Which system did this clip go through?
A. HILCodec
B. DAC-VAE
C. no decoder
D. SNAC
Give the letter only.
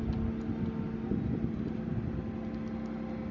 C